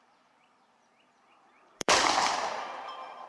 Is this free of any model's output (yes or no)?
no